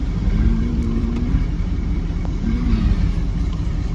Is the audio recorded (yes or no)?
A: no